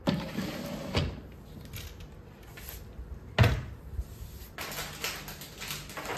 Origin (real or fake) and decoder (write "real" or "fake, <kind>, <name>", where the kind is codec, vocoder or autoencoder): real